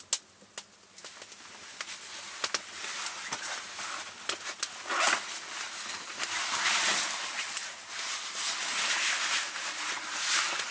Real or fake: real